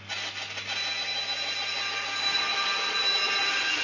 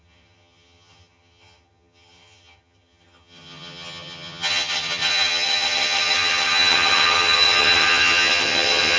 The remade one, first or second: second